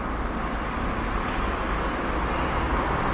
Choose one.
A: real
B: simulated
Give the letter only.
A